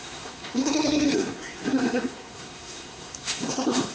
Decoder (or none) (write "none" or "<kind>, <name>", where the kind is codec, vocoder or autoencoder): codec, SNAC